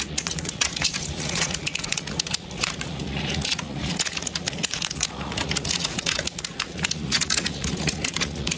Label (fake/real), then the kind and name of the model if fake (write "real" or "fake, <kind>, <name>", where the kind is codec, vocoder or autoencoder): fake, vocoder, Vocos